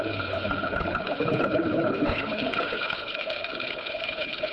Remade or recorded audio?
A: remade